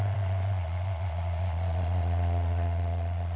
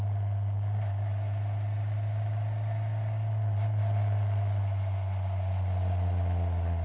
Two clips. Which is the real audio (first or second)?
second